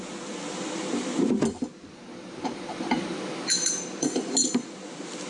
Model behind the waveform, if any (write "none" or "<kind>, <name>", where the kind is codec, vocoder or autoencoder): none